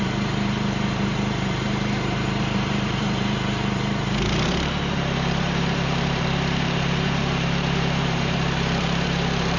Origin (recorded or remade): remade